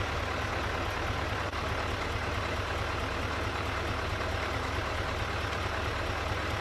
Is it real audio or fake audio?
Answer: real